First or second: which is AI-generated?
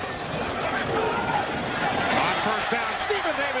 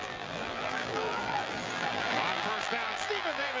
second